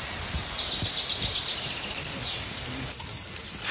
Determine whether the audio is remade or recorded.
recorded